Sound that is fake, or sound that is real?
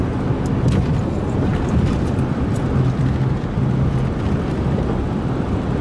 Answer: real